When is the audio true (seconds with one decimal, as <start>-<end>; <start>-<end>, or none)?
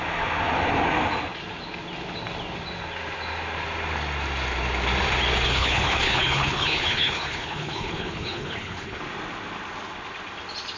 0.0-5.5; 9.0-10.8